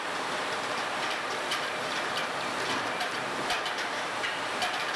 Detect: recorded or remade remade